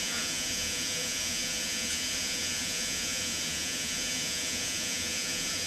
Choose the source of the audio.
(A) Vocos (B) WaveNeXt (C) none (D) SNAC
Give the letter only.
A